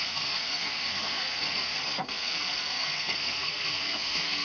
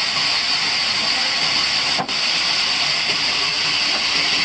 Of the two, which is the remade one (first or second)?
first